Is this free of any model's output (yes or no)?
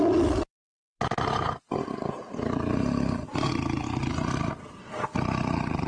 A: yes